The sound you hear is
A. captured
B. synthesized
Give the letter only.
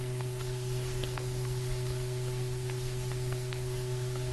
B